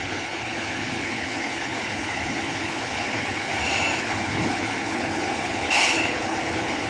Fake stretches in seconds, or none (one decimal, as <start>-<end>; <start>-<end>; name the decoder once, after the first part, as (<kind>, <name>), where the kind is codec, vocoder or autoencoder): 0.0-3.5 (codec, HILCodec); 4.0-6.9